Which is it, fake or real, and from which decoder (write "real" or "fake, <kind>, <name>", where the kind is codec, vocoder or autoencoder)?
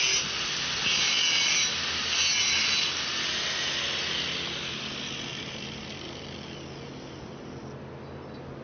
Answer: real